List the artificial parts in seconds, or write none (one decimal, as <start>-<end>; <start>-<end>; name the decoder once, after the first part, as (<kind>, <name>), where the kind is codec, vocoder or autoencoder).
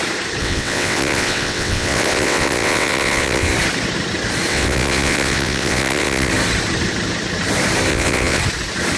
0.4-3.5 (vocoder, WaveNeXt); 4.5-6.3; 7.9-8.4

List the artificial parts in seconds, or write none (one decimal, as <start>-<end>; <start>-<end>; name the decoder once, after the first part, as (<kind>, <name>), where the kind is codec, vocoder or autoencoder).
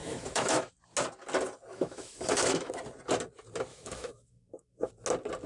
0.0-0.7 (autoencoder, DAC-VAE); 1.7-2.7; 3.7-4.9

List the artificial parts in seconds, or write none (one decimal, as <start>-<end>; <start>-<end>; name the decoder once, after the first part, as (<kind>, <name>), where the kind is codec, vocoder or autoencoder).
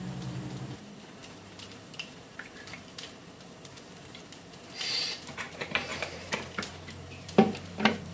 0.0-8.1 (vocoder, BigVGAN v2)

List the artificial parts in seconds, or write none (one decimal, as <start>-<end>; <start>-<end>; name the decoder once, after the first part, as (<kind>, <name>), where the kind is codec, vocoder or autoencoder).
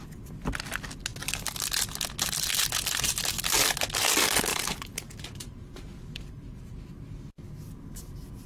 4.5-6.8 (vocoder, BigVGAN v2)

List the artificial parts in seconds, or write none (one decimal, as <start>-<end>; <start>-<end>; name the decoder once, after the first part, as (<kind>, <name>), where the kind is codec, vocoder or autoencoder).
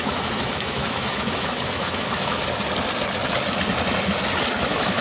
0.0-2.4 (autoencoder, DAC-VAE); 4.6-5.0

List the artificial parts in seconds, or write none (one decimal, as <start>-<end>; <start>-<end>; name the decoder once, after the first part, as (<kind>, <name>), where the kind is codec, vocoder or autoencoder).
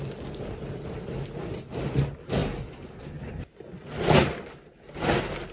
none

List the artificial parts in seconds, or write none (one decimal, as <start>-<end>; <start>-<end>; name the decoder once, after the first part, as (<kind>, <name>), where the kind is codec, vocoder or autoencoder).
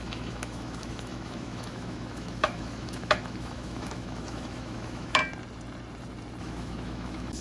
0.0-5.2 (autoencoder, DAC-VAE); 6.4-7.4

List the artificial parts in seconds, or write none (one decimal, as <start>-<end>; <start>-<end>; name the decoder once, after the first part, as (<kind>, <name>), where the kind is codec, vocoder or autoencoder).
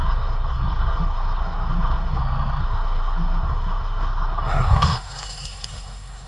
0.0-2.2 (codec, SNAC); 2.6-6.3